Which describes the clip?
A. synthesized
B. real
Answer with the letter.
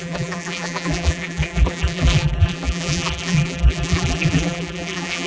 A